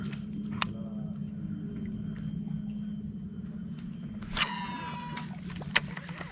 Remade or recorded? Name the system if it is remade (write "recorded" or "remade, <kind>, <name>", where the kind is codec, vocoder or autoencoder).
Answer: recorded